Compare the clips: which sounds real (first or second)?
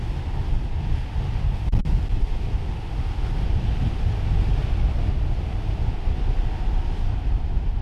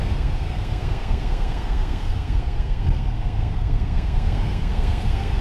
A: first